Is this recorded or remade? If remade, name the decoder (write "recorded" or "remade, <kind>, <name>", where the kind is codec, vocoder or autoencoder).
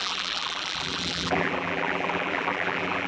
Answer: remade, vocoder, BigVGAN v2